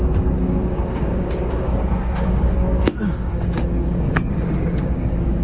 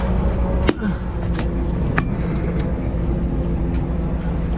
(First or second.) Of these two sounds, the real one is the second